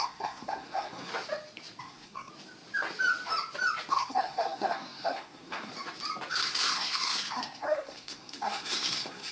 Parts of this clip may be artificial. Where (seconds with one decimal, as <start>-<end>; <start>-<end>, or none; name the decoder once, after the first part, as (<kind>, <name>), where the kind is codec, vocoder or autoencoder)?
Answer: 0.0-1.1 (codec, SNAC); 1.8-2.3; 3.9-5.7; 6.3-9.3